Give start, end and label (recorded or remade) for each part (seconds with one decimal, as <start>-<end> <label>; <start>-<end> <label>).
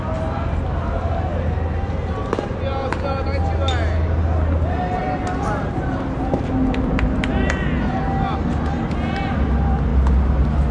0.0-10.7 recorded